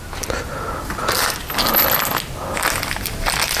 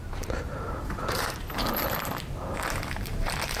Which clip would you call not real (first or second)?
second